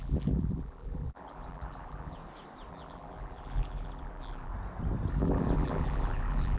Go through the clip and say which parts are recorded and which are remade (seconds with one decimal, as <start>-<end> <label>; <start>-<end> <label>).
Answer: 0.0-2.2 remade; 2.2-2.7 recorded; 2.7-4.5 remade; 4.5-5.1 recorded; 5.1-6.6 remade